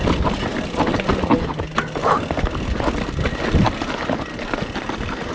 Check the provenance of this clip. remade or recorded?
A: recorded